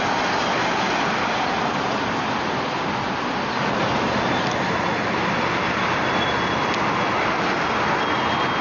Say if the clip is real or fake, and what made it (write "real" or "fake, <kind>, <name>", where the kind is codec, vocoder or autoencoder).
real